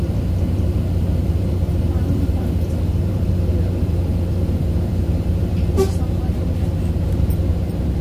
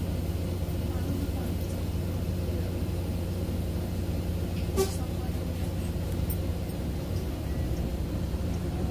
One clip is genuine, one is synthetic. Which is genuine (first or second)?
second